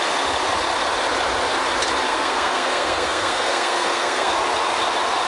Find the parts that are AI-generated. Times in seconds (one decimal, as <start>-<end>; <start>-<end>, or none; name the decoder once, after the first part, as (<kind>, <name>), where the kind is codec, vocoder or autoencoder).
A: 2.1-4.3 (codec, SNAC)